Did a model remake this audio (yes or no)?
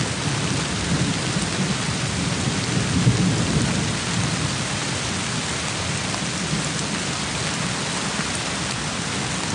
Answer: no